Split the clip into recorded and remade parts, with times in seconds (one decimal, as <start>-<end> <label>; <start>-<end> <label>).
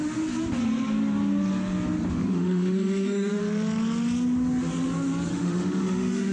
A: 0.0-2.1 recorded; 2.1-3.4 remade; 3.4-5.3 recorded; 5.3-6.3 remade